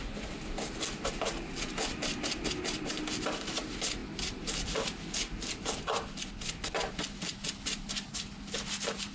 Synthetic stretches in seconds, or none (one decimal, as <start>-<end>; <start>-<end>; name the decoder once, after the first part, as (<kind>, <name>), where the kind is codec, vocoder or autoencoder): none